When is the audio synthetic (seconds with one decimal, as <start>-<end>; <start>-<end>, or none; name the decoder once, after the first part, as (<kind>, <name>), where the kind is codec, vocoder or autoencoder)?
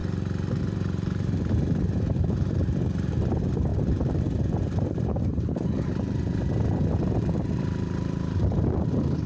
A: 0.0-5.3 (vocoder, BigVGAN v2); 7.2-9.3